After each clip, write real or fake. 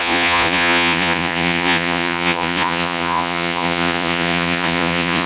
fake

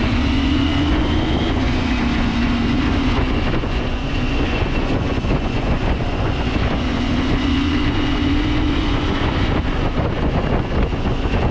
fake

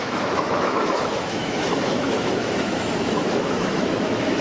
fake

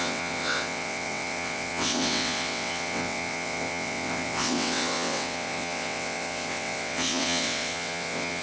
fake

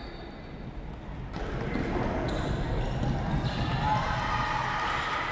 real